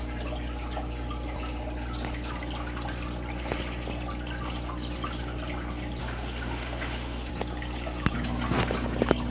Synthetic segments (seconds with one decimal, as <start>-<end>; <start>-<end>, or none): 6.0-7.3